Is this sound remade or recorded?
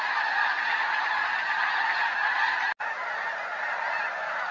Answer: recorded